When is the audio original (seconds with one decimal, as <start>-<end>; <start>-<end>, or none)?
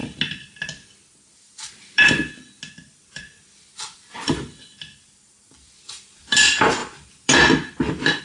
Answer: 0.0-1.2; 2.2-2.8